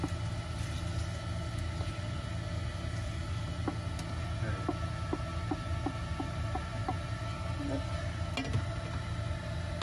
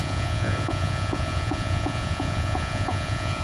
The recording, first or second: first